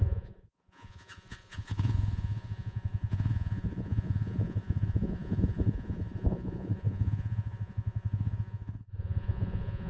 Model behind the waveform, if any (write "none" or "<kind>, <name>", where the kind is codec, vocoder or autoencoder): vocoder, Vocos